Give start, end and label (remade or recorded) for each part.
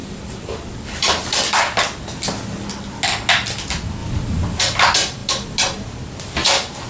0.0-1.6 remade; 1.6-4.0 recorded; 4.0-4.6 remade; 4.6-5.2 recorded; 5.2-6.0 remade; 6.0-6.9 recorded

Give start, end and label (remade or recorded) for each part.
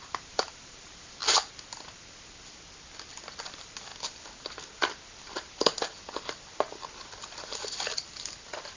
0.0-1.2 remade; 1.2-3.4 recorded; 3.4-3.9 remade; 3.9-8.8 recorded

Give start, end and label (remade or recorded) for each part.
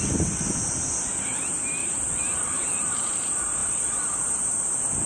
0.0-1.8 recorded; 1.8-3.1 remade; 3.1-3.6 recorded; 3.6-4.5 remade; 4.5-5.1 recorded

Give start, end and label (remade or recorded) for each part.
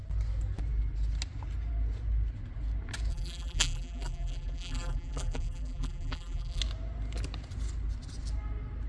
0.0-3.1 recorded; 3.1-6.6 remade; 6.6-8.9 recorded